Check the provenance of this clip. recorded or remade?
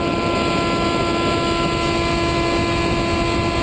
recorded